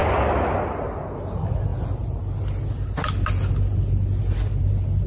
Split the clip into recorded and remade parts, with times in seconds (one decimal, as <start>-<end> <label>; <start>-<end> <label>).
0.0-5.1 recorded